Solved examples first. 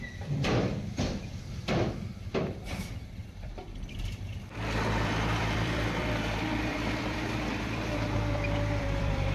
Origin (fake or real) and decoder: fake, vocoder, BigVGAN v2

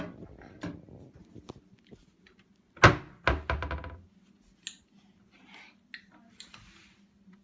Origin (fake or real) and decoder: real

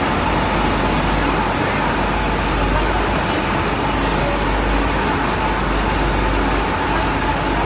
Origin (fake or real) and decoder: real